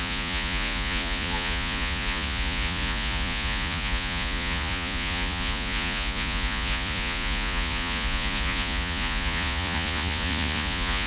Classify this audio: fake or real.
fake